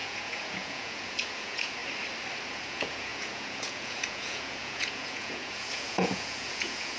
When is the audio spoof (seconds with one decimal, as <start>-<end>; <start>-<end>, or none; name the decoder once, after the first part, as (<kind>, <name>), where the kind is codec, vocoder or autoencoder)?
0.0-1.8 (vocoder, Vocos); 2.5-7.0